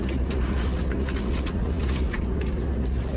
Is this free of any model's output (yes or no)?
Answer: no